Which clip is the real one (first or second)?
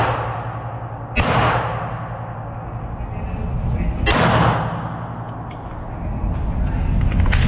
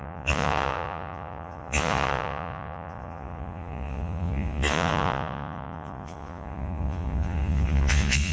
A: first